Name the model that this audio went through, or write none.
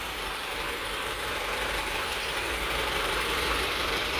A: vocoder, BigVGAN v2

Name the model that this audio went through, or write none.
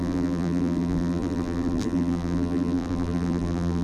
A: vocoder, BigVGAN v2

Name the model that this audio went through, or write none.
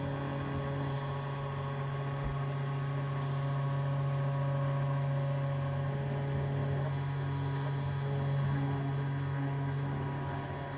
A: none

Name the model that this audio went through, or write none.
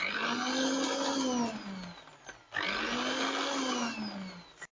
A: none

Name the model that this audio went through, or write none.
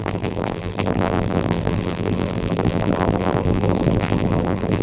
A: vocoder, BigVGAN v2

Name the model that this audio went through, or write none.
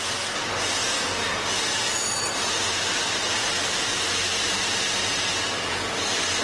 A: none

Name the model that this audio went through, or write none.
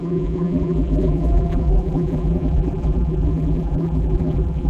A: vocoder, BigVGAN v2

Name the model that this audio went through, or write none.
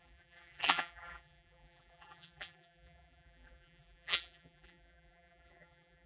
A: vocoder, BigVGAN v2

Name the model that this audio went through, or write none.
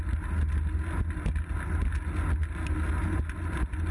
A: none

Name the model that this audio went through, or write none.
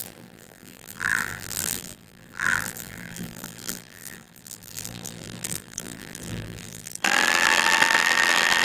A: vocoder, BigVGAN v2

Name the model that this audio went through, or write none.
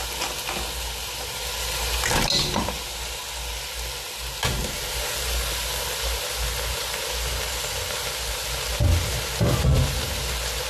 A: none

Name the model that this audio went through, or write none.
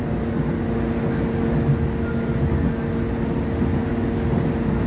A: none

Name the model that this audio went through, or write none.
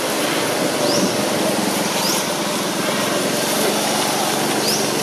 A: none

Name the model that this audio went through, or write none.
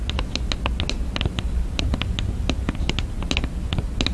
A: none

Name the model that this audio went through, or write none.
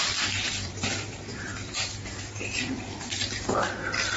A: vocoder, BigVGAN v2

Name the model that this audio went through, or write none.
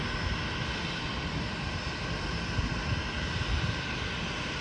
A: none